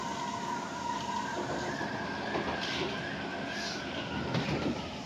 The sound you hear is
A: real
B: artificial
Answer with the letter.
A